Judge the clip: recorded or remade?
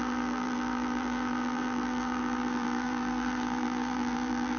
remade